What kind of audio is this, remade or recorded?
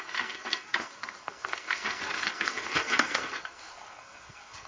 remade